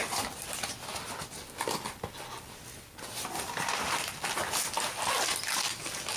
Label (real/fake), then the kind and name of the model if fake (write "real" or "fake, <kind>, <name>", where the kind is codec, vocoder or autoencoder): real